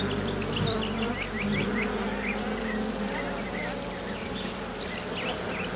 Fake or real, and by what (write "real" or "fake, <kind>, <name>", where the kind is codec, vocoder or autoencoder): real